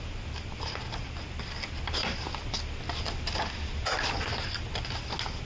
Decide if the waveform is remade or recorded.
recorded